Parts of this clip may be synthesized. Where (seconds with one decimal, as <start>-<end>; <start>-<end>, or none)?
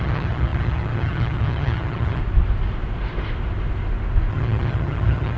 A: 0.0-2.2; 4.3-5.4